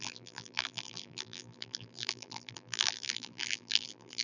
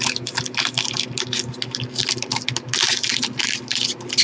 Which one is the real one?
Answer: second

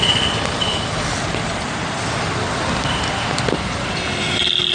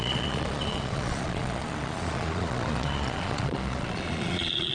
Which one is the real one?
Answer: first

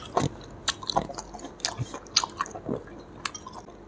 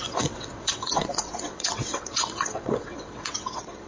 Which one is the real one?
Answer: first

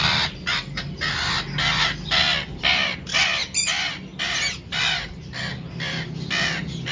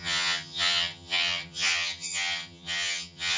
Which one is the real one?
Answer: first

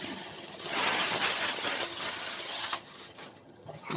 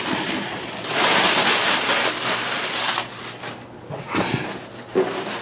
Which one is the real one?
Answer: second